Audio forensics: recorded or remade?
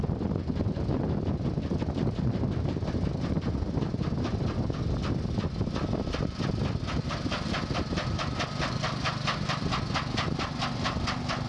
recorded